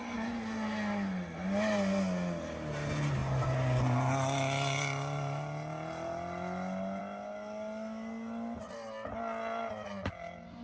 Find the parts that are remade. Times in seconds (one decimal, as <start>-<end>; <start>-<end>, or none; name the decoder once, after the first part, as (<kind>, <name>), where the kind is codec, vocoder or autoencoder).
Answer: none